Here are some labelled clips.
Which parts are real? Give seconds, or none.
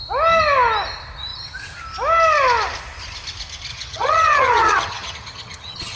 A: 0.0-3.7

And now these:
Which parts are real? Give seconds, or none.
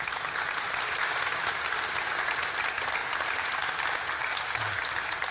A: 0.0-5.3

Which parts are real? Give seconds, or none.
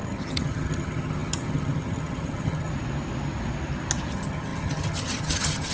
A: 2.7-4.1